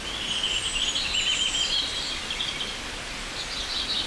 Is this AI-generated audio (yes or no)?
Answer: no